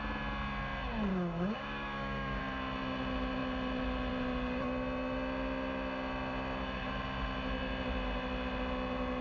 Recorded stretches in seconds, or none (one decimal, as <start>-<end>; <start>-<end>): 0.0-1.1; 2.4-9.2